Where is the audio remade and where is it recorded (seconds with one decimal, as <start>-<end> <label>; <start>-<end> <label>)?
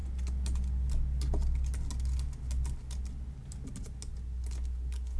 0.0-5.2 recorded